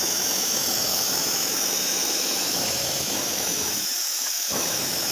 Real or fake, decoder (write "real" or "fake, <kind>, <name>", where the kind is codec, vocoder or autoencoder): fake, autoencoder, DAC-VAE